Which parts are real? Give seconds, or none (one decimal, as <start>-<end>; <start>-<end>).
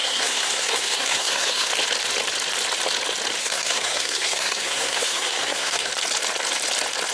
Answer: 1.7-3.4; 5.9-7.1